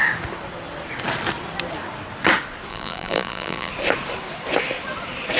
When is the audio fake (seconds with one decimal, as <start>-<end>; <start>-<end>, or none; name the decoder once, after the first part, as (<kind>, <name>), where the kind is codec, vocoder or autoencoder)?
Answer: 2.7-3.7 (vocoder, BigVGAN v2)